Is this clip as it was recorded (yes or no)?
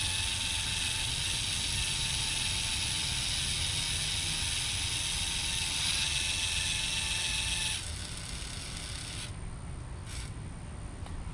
yes